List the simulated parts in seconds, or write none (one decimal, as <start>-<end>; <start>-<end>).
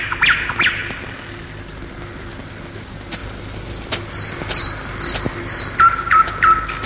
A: none